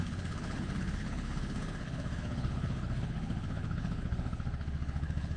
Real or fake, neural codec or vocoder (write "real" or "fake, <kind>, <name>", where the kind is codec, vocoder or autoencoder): fake, codec, HILCodec